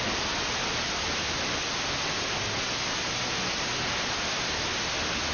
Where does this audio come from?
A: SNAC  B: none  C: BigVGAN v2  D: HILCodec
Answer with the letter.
B